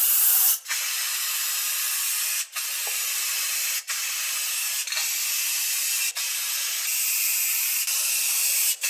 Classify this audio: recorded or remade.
recorded